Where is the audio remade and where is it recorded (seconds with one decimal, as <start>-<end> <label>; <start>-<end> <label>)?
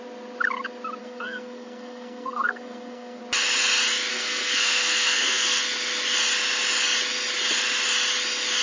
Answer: 0.0-1.0 recorded; 1.0-3.2 remade; 3.2-4.1 recorded; 4.1-5.6 remade; 5.6-8.6 recorded